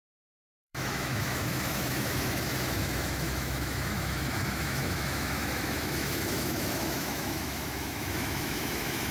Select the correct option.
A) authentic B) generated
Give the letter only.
B